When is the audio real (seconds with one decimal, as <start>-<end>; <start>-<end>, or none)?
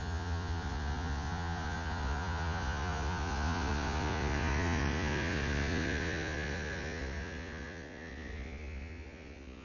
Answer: none